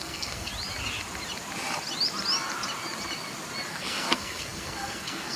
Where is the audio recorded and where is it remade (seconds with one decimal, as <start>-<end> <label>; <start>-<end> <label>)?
0.0-0.5 remade; 0.5-3.7 recorded; 3.7-5.4 remade